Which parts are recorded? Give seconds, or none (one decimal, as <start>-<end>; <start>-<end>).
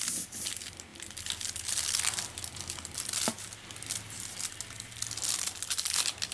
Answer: 0.0-6.3